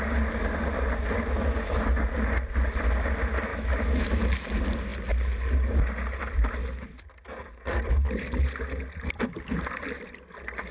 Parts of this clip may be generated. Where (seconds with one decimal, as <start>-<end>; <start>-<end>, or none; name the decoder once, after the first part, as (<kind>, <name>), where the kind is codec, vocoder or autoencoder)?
3.5-4.2 (autoencoder, DAC-VAE)